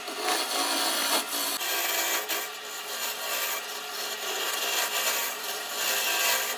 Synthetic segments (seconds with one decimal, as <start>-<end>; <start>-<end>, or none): 5.2-5.8